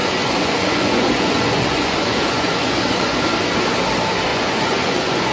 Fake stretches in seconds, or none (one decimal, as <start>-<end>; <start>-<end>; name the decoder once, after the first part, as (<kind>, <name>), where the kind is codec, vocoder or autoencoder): 0.0-3.2 (vocoder, Vocos); 4.3-5.3